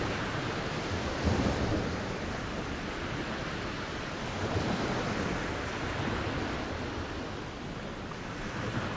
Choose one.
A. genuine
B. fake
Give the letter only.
A